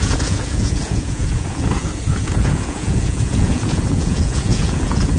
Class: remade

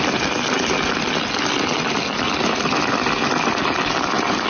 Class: recorded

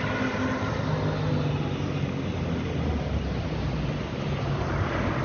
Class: recorded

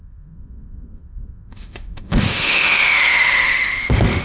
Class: remade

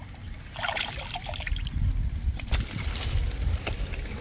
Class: recorded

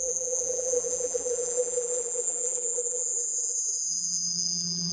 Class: remade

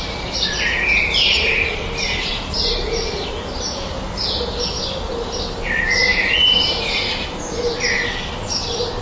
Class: recorded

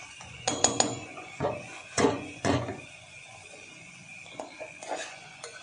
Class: remade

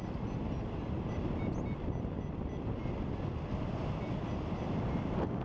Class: recorded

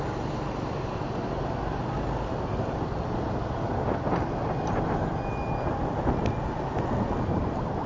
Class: recorded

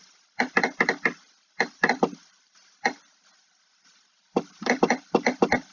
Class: recorded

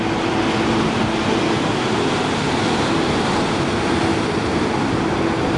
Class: recorded